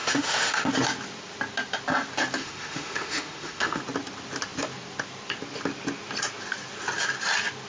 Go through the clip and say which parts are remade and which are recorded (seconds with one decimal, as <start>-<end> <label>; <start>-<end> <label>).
0.0-0.7 remade; 0.7-2.4 recorded; 2.4-3.8 remade; 3.8-7.7 recorded